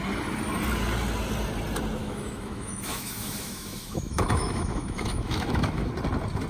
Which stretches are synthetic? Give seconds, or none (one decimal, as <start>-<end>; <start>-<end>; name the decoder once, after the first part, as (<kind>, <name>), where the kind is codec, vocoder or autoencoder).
2.0-5.9 (autoencoder, DAC-VAE)